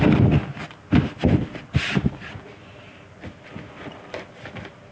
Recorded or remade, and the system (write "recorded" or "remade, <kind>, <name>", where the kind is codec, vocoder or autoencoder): recorded